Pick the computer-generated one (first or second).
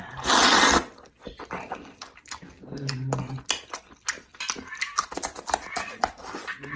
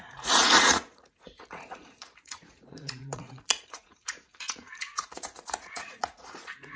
second